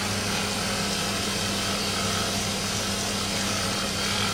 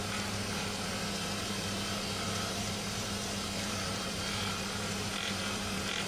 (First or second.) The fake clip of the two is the second